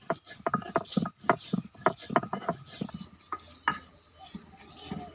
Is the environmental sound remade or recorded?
recorded